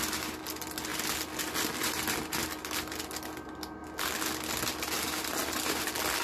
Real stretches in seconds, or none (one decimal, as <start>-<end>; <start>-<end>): 0.0-6.2